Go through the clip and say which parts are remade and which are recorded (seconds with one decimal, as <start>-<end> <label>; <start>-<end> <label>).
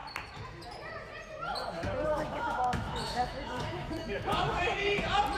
0.0-2.1 recorded; 2.1-4.8 remade; 4.8-5.4 recorded